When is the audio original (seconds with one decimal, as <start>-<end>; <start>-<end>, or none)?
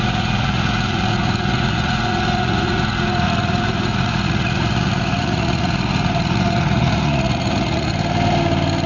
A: 7.9-8.9